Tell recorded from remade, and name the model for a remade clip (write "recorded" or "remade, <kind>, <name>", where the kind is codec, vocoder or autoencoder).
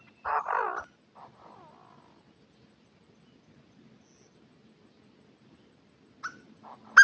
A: recorded